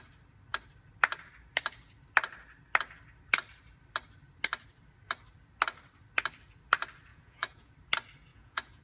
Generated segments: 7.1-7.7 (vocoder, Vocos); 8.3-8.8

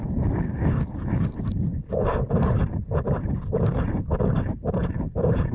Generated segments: 0.0-5.5 (vocoder, BigVGAN v2)

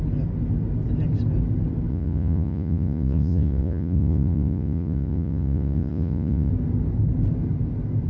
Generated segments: 1.9-6.5 (vocoder, Vocos)

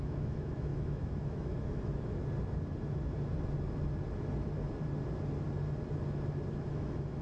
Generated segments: 0.0-2.2 (autoencoder, DAC-VAE); 6.5-7.2

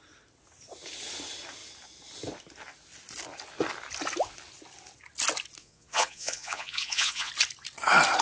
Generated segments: 5.6-7.3 (vocoder, Vocos)

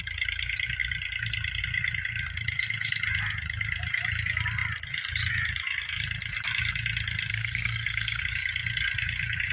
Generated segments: 7.3-8.2 (codec, SNAC)

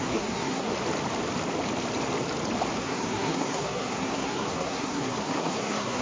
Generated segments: 0.0-0.7 (codec, SNAC); 2.8-6.0